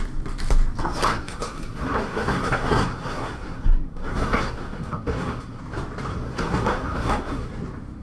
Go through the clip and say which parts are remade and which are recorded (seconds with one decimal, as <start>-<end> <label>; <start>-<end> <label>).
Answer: 0.0-0.8 recorded; 0.8-5.6 remade; 5.6-6.1 recorded; 6.1-7.5 remade; 7.5-8.0 recorded